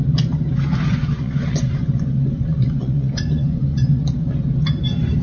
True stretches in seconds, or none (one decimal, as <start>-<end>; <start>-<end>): 0.0-0.9; 4.0-5.2